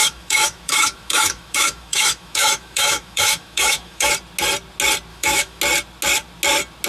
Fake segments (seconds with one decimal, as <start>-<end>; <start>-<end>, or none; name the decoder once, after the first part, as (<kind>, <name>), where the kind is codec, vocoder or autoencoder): 0.0-4.1 (autoencoder, DAC-VAE); 5.1-5.6